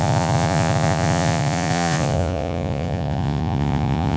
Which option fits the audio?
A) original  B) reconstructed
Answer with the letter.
B